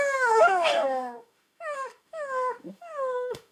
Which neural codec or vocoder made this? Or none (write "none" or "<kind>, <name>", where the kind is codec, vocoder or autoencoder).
autoencoder, DAC-VAE